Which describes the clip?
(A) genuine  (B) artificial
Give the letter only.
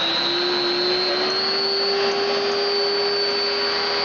A